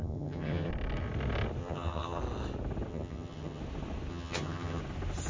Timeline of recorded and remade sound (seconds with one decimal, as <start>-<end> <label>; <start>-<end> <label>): 0.0-0.7 remade; 0.7-1.6 recorded; 1.6-2.2 remade; 2.2-2.9 recorded; 2.9-3.6 remade; 3.6-4.1 recorded; 4.1-4.8 remade; 4.8-5.3 recorded